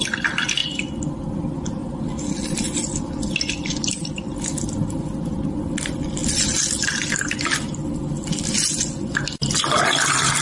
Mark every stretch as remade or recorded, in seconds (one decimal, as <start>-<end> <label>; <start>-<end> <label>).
0.0-10.4 recorded